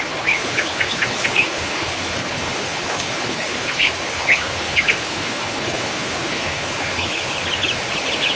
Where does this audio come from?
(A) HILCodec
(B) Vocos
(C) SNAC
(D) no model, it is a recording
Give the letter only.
A